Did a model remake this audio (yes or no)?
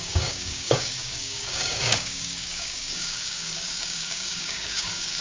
yes